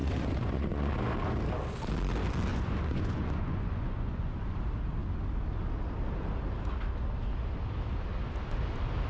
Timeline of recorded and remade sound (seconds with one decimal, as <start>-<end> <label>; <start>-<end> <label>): 0.0-0.9 remade; 0.9-2.5 recorded; 2.5-4.3 remade; 4.3-9.1 recorded